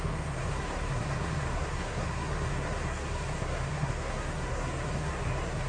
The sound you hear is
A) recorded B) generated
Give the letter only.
B